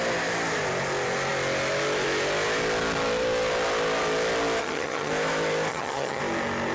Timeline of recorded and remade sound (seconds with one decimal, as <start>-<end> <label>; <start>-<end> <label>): 0.0-4.6 recorded; 4.6-5.1 remade; 5.1-5.7 recorded; 5.7-6.2 remade; 6.2-6.7 recorded

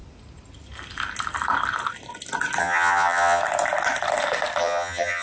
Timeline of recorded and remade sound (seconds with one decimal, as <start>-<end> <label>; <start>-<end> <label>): 0.0-2.6 recorded; 2.6-3.4 remade; 3.4-4.6 recorded; 4.6-5.2 remade

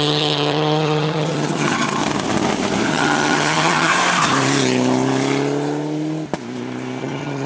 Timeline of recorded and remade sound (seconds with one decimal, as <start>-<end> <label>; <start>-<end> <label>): 0.0-2.0 remade; 2.0-2.9 recorded; 2.9-3.9 remade; 3.9-7.0 recorded; 7.0-7.5 remade

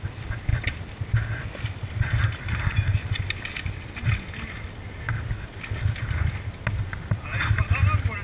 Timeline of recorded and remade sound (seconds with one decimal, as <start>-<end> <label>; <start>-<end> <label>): 0.0-8.2 recorded

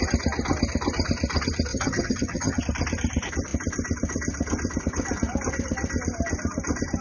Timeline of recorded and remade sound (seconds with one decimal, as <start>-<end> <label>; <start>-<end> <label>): 0.0-1.7 recorded; 1.7-2.6 remade; 2.6-7.0 recorded

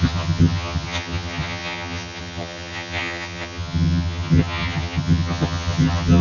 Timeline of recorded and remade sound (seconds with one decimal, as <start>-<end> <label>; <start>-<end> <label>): 0.0-6.2 remade

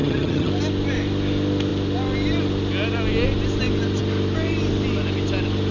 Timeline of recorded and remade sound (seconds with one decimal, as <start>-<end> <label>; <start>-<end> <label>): 0.0-0.5 remade; 0.5-5.7 recorded